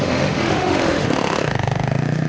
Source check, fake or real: fake